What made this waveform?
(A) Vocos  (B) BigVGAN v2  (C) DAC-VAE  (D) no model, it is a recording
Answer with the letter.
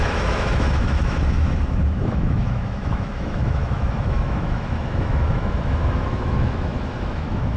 C